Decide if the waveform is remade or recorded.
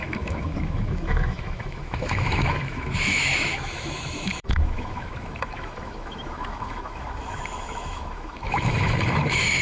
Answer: remade